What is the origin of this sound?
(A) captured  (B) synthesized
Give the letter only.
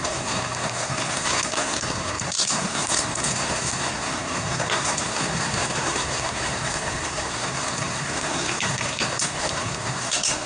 B